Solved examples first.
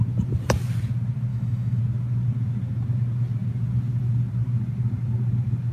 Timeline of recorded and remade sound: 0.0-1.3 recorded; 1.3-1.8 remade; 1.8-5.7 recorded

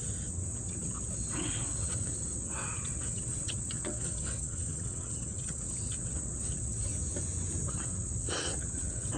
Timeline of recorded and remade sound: 0.0-6.9 remade; 6.9-7.7 recorded; 7.7-9.2 remade

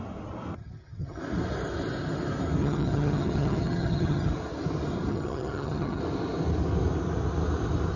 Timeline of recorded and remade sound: 0.0-0.5 recorded; 0.5-1.2 remade; 1.2-2.6 recorded; 2.6-4.3 remade; 4.3-5.1 recorded; 5.1-6.0 remade; 6.0-8.0 recorded

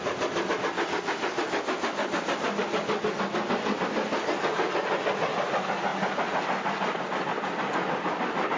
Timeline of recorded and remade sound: 0.0-8.6 recorded